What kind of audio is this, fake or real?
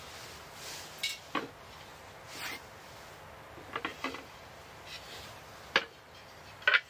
real